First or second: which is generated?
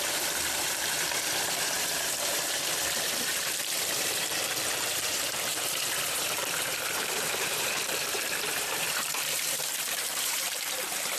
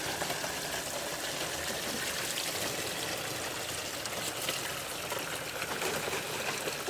first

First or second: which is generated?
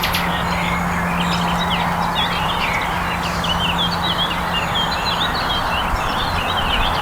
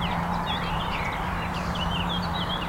second